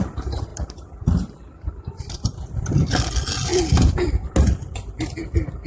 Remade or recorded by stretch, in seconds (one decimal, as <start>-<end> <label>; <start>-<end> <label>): 0.0-0.5 recorded; 0.5-2.7 remade; 2.7-3.5 recorded; 3.5-4.3 remade; 4.3-5.7 recorded